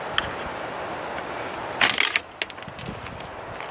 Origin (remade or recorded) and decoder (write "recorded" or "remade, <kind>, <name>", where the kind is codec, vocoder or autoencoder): recorded